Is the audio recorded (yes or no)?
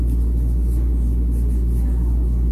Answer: yes